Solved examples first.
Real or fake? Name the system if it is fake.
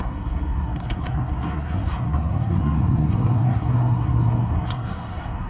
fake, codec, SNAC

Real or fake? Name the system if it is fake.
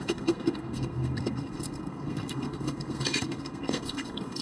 fake, codec, SNAC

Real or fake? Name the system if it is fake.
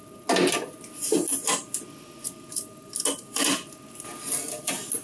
real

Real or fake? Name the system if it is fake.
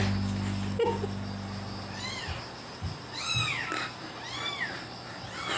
real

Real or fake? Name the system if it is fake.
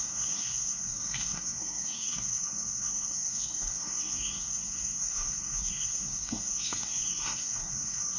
fake, codec, SNAC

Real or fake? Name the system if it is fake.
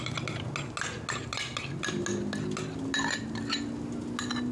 real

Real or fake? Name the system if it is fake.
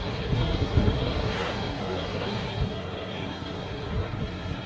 fake, codec, SNAC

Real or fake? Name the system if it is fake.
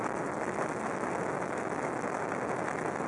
real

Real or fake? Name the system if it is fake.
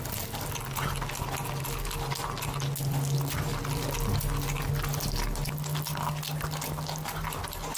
real